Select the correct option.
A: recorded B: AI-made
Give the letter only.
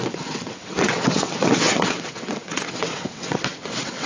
B